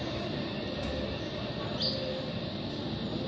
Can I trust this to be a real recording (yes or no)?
yes